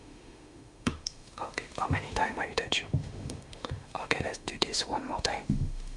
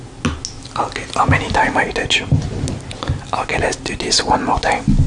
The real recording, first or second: second